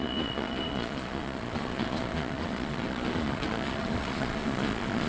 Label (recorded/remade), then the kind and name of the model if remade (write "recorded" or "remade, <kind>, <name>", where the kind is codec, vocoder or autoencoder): remade, vocoder, Vocos